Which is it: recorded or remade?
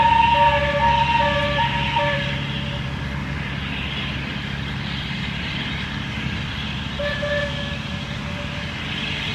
recorded